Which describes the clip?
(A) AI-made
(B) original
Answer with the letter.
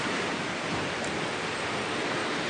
B